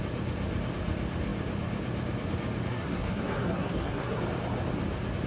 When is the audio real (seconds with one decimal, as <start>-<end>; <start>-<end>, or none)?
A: 0.0-2.7; 4.2-5.3